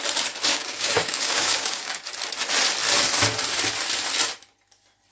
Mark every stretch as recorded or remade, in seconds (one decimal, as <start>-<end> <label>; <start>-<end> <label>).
0.0-0.5 recorded; 0.5-2.0 remade; 2.0-5.1 recorded